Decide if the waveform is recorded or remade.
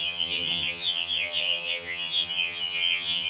remade